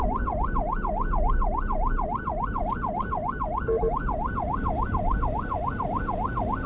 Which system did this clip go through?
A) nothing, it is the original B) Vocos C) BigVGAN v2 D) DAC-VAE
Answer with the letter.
A